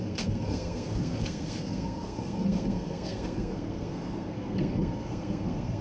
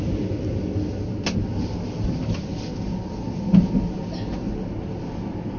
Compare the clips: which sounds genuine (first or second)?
second